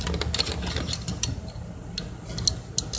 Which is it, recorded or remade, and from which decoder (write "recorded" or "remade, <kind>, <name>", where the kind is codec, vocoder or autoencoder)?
recorded